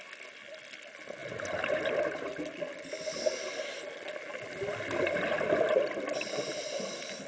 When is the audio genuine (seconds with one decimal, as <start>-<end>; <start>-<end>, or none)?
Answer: 0.0-7.3